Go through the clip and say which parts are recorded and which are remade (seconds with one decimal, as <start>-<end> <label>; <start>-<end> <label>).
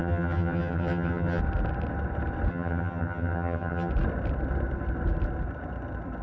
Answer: 0.0-1.4 remade; 1.4-2.5 recorded; 2.5-3.9 remade; 3.9-6.2 recorded